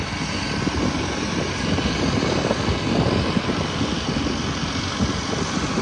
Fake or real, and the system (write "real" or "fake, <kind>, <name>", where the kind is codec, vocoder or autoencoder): real